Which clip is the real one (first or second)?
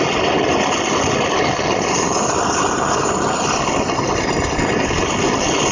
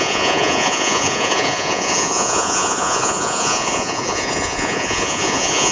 first